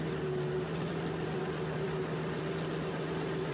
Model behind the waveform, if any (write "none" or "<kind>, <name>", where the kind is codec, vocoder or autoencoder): vocoder, BigVGAN v2